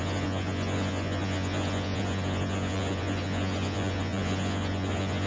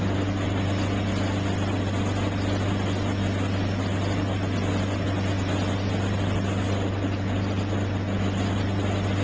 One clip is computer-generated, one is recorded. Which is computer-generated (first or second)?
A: first